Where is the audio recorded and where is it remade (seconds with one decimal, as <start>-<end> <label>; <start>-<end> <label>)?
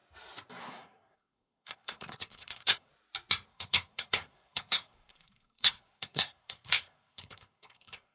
0.0-0.6 recorded; 0.6-2.9 remade; 2.9-3.5 recorded; 3.5-8.1 remade